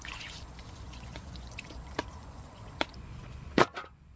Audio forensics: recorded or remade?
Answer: remade